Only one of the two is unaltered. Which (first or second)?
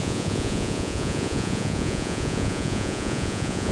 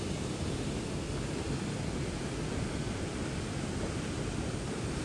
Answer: second